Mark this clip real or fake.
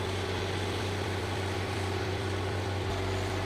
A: fake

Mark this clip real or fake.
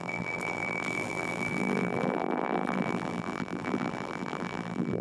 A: fake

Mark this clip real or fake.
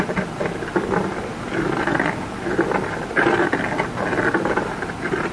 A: fake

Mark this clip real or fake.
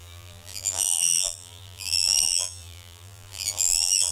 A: fake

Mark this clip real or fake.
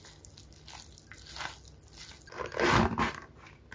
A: real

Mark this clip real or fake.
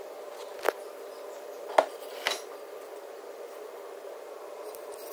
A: real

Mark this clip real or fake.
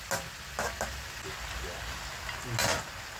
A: real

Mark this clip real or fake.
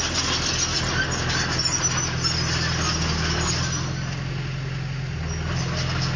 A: real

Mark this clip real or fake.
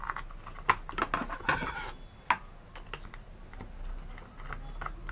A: real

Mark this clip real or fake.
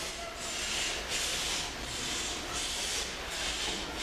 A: real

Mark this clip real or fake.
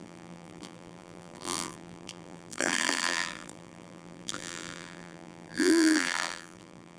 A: fake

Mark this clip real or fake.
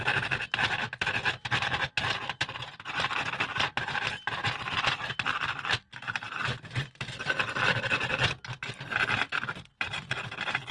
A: real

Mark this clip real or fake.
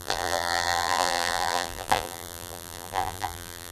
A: fake